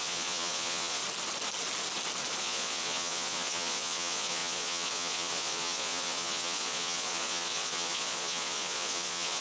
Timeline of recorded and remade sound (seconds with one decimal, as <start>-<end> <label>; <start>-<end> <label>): 0.0-1.0 remade; 1.0-2.4 recorded; 2.4-9.4 remade